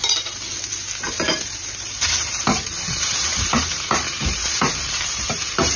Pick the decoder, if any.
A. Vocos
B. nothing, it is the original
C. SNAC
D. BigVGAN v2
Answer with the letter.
D